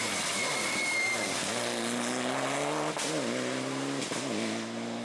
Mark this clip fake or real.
real